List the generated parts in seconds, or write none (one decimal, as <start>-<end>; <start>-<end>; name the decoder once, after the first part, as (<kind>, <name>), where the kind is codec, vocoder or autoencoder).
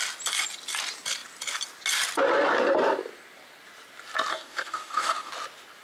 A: 4.3-5.3 (codec, DAC)